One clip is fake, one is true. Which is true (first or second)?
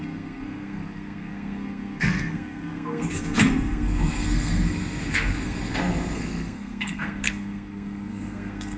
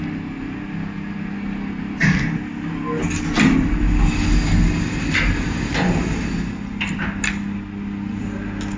second